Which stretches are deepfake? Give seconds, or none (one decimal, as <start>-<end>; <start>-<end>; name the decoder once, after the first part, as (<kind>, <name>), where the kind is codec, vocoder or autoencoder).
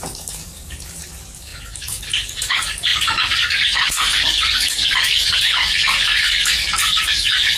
0.0-7.6 (codec, DAC)